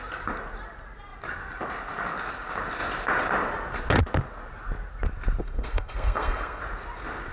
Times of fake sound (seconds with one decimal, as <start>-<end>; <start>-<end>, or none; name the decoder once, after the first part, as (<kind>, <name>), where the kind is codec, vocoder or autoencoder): 5.4-6.6 (codec, SNAC)